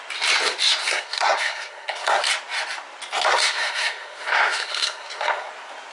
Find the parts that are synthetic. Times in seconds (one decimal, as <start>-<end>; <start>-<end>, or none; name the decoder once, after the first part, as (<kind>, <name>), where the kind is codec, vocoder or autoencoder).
0.8-2.2 (codec, SNAC); 3.3-5.5